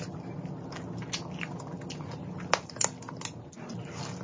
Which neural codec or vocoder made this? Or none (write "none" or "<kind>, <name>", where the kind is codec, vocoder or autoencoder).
none